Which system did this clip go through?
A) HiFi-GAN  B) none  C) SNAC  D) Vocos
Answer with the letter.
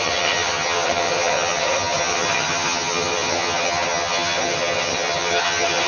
A